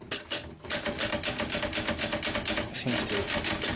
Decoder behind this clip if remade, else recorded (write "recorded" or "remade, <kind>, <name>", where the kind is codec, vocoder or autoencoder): recorded